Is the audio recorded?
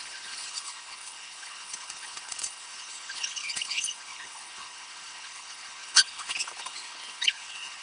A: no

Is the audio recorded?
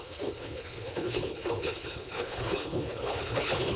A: no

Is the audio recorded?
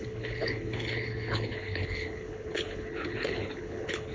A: no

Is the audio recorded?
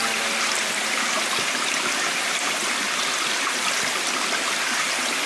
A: yes